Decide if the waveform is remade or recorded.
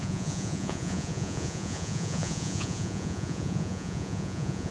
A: remade